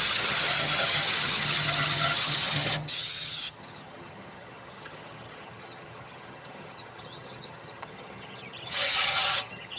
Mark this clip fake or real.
fake